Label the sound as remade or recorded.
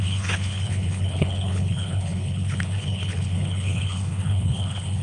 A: remade